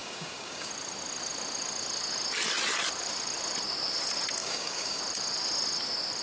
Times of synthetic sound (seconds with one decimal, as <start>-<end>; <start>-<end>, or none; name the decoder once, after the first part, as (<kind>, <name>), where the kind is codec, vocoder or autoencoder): 0.0-0.7 (codec, DAC); 4.4-5.0